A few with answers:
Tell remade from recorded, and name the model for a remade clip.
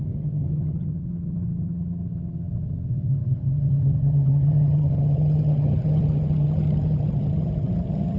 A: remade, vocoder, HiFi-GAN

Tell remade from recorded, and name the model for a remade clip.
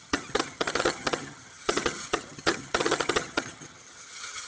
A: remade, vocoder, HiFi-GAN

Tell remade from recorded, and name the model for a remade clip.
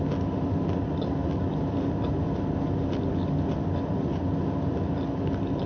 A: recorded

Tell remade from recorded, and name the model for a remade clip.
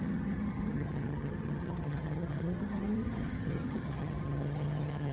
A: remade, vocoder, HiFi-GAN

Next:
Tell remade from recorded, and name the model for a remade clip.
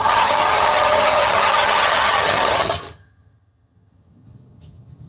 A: remade, vocoder, HiFi-GAN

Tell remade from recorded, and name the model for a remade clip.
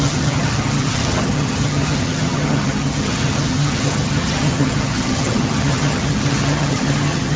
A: remade, vocoder, HiFi-GAN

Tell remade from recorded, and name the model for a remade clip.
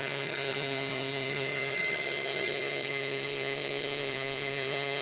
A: remade, vocoder, HiFi-GAN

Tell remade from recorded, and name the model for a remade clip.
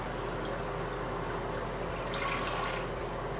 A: recorded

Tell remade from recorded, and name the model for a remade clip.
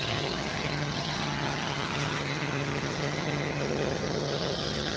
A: remade, vocoder, HiFi-GAN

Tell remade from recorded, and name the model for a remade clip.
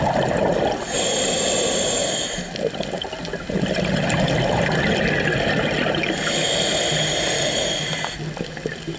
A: recorded